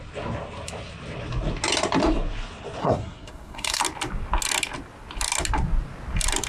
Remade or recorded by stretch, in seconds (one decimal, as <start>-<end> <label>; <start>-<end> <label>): 0.0-2.8 recorded; 2.8-3.8 remade; 3.8-6.5 recorded